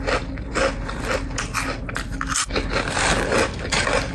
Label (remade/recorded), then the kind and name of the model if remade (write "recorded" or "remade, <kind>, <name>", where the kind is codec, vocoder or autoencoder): recorded